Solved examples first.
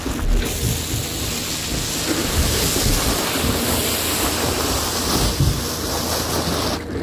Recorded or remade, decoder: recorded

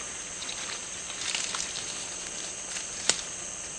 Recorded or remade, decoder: remade, vocoder, BigVGAN v2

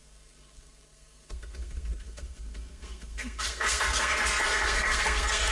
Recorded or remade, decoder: remade, codec, SNAC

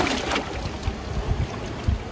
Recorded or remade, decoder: recorded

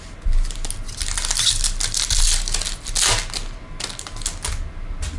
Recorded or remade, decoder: recorded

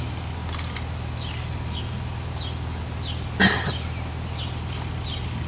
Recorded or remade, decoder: recorded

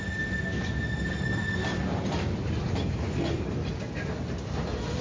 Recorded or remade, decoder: recorded